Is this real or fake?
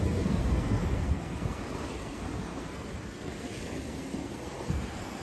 fake